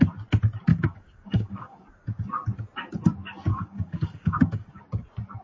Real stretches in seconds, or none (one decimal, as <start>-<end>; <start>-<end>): 0.0-0.7; 1.9-3.5; 4.8-5.4